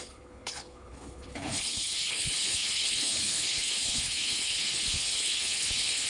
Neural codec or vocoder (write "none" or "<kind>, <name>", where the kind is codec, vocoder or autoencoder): codec, HILCodec